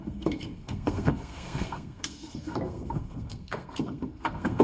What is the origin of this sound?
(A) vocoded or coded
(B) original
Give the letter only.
A